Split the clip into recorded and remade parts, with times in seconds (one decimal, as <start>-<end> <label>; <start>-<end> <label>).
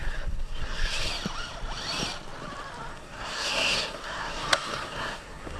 0.0-1.1 remade; 1.1-2.9 recorded; 2.9-5.6 remade